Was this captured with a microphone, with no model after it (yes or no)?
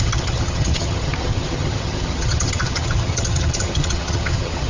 no